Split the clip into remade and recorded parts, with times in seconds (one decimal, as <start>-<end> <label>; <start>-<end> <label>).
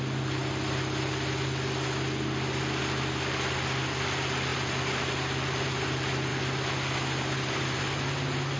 0.0-8.6 recorded